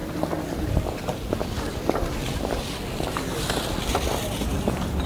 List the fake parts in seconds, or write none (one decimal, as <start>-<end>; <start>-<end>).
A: none